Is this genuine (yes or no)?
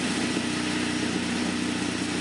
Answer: yes